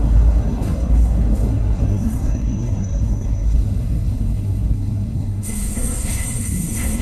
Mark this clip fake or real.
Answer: fake